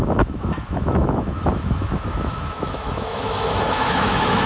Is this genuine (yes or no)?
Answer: no